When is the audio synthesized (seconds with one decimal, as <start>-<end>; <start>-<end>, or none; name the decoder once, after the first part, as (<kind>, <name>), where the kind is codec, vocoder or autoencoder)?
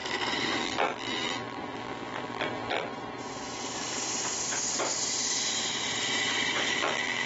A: 0.6-2.9 (vocoder, BigVGAN v2); 6.8-7.3